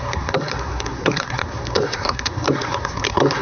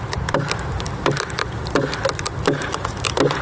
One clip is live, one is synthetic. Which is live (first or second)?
second